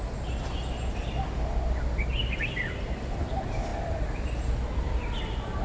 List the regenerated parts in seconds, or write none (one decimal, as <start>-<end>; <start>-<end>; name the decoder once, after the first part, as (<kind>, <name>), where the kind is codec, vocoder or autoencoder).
none

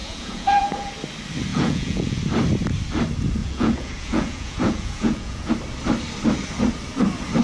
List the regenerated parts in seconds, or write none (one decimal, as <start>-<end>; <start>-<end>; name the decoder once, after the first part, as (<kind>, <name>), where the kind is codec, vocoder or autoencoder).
0.0-0.9 (vocoder, Vocos); 1.5-2.2; 3.4-5.5